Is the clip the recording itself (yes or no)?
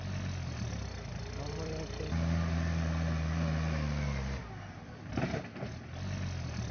yes